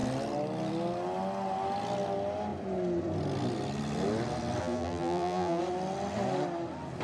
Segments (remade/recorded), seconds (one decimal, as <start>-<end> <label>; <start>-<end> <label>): 0.0-4.6 recorded; 4.6-5.6 remade; 5.6-7.0 recorded